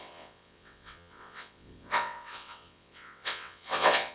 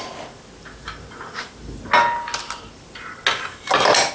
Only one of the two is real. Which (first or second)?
second